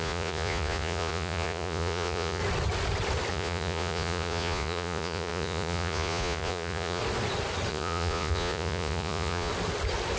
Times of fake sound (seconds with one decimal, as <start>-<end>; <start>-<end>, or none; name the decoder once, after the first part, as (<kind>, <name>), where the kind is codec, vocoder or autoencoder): 0.0-2.4 (vocoder, Vocos); 3.3-7.0; 7.7-9.5